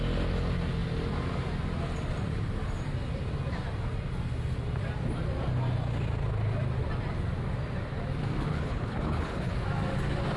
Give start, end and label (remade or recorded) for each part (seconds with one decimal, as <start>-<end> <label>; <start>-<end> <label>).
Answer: 0.0-8.5 recorded; 8.5-9.5 remade; 9.5-10.4 recorded